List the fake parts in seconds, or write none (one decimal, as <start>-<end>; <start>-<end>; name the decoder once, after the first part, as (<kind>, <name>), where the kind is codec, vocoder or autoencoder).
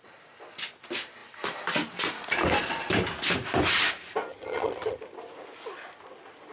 4.3-5.0 (vocoder, HiFi-GAN)